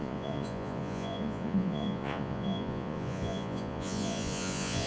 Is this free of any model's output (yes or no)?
no